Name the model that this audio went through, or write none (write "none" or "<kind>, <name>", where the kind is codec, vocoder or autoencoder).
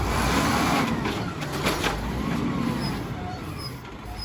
none